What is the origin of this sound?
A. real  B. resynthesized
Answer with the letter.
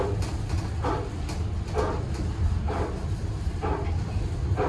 A